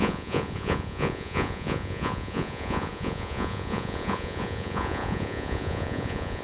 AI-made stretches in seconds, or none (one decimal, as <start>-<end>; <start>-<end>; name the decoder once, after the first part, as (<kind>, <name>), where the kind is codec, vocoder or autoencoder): 0.0-6.4 (vocoder, Vocos)